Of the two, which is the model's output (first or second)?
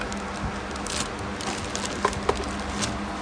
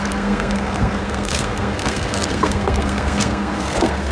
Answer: second